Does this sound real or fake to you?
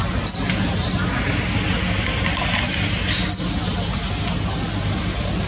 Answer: real